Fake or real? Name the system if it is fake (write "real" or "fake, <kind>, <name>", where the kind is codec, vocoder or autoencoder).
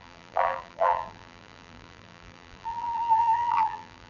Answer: fake, vocoder, BigVGAN v2